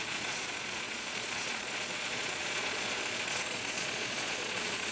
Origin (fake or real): fake